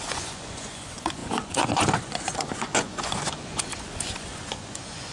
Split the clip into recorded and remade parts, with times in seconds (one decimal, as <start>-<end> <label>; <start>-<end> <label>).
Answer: 0.0-5.1 remade